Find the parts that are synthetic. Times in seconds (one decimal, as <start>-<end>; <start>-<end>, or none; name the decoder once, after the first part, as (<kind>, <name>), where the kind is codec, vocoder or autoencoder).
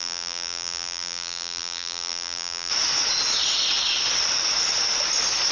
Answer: 0.0-2.7 (vocoder, BigVGAN v2)